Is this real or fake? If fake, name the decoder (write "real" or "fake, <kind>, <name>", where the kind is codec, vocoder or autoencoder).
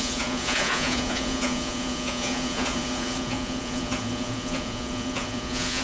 fake, vocoder, Vocos